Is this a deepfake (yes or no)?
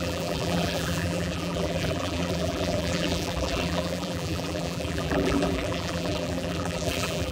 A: yes